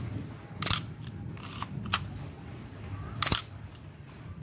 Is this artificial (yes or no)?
yes